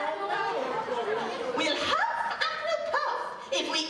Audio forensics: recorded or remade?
recorded